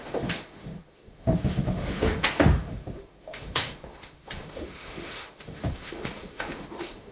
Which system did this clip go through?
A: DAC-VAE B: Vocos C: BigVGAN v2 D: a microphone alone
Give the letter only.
A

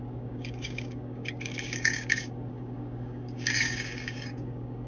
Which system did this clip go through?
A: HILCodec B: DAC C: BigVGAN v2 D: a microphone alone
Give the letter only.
B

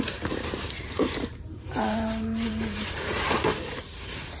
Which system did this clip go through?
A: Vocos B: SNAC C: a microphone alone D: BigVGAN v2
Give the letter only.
D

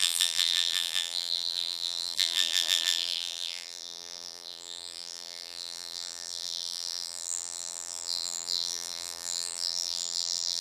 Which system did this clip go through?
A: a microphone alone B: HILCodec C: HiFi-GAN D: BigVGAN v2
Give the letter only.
D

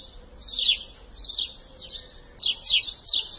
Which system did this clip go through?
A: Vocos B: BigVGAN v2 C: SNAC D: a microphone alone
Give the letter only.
D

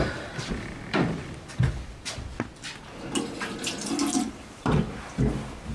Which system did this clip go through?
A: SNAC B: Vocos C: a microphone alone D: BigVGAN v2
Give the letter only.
D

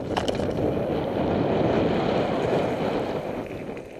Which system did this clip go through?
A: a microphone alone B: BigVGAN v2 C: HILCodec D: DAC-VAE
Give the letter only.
B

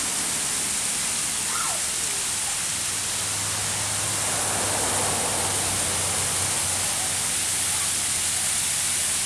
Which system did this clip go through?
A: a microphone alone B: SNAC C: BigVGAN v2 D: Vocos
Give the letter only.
A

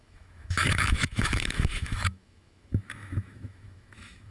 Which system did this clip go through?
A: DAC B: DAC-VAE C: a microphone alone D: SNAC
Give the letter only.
B